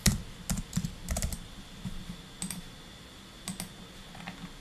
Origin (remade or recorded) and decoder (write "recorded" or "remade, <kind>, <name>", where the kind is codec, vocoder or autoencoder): recorded